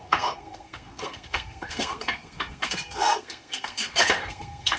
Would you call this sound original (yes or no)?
no